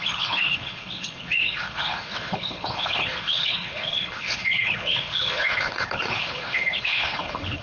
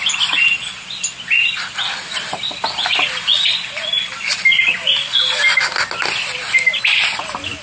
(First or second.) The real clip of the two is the second